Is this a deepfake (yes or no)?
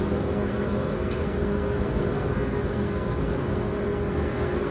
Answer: yes